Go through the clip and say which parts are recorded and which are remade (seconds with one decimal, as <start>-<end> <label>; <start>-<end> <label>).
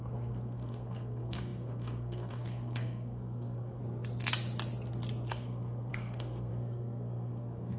0.0-3.8 remade; 3.8-5.3 recorded; 5.3-7.8 remade